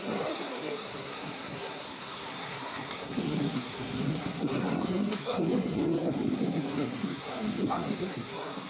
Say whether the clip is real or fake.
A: fake